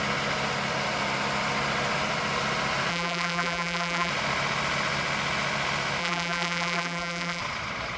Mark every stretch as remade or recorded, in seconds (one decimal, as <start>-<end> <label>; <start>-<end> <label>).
0.0-2.9 recorded; 2.9-4.1 remade; 4.1-6.0 recorded; 6.0-7.4 remade; 7.4-8.0 recorded

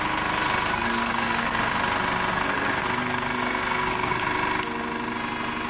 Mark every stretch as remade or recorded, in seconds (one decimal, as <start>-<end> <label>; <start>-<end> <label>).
0.0-0.7 recorded; 0.7-1.6 remade; 1.6-2.3 recorded; 2.3-4.2 remade; 4.2-5.7 recorded

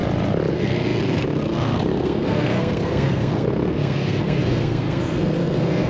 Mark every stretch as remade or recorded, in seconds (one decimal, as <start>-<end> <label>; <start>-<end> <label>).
0.0-0.5 recorded; 0.5-5.9 remade

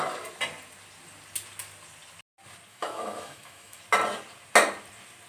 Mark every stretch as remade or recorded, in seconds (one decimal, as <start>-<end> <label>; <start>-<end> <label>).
0.0-2.7 recorded; 2.7-3.8 remade; 3.8-5.3 recorded

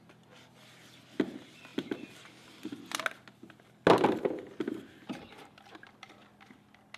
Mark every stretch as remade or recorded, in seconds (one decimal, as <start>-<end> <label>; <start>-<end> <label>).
0.0-7.0 recorded